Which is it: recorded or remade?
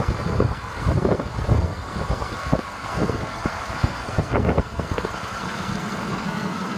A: remade